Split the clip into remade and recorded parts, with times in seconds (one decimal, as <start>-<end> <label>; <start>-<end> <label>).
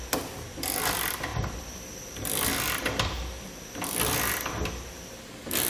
0.0-5.7 recorded